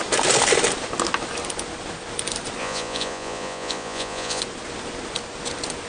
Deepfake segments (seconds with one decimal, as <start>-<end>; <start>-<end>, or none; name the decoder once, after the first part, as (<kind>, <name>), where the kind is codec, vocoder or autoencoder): 2.6-4.4 (vocoder, Vocos)